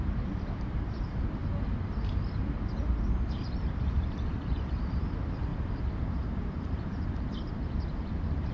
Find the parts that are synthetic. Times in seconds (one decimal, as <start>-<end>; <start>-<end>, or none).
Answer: 0.0-1.4; 2.8-5.5; 6.1-8.5